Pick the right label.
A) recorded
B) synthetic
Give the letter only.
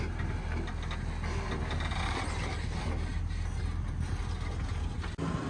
A